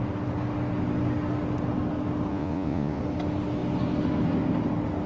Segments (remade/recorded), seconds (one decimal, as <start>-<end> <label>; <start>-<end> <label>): 0.0-2.3 recorded; 2.3-3.0 remade; 3.0-5.1 recorded